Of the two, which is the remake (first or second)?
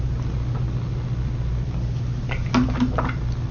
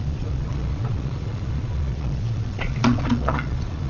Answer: second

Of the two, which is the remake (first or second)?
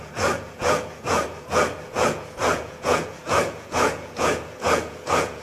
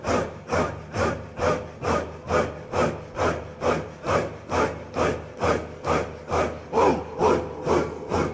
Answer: first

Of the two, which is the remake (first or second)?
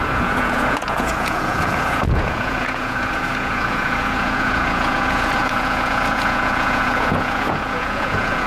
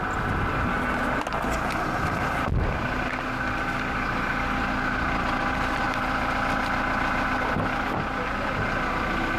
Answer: first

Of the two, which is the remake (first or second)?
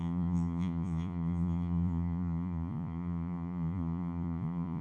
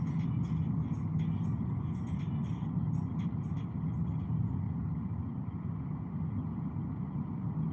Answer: first